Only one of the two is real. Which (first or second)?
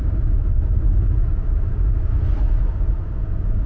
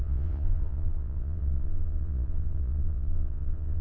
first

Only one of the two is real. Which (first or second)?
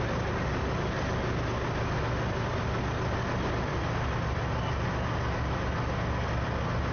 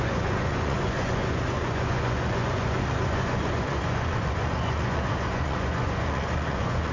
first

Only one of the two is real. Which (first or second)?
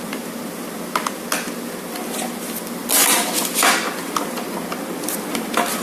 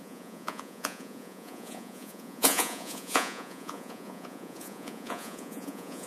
first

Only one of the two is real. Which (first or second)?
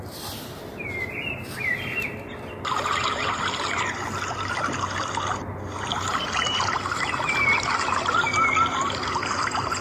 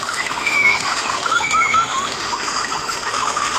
first